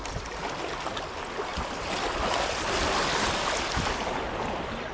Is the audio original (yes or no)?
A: yes